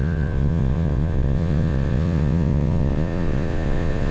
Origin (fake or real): fake